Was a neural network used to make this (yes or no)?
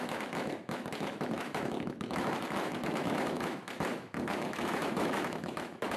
yes